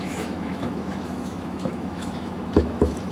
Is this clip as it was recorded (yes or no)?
no